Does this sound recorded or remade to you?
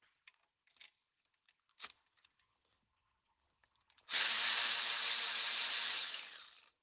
recorded